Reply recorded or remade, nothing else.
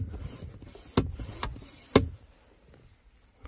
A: recorded